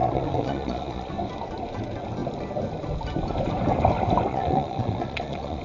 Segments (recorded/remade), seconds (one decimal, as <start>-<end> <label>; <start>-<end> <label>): 0.0-1.1 remade; 1.1-4.3 recorded; 4.3-5.6 remade